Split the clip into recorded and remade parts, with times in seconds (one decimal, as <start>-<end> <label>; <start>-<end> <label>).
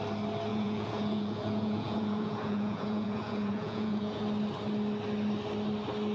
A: 0.0-0.5 recorded; 0.5-4.2 remade; 4.2-6.1 recorded